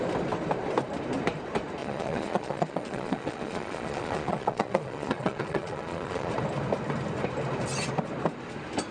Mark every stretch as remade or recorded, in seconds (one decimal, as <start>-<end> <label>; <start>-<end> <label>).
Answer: 0.0-1.8 recorded; 1.8-6.3 remade; 6.3-8.9 recorded